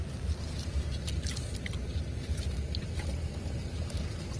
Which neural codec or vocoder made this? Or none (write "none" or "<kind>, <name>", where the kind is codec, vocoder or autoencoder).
none